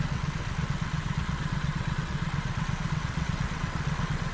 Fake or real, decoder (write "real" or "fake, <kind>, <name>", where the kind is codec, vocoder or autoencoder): fake, vocoder, WaveNeXt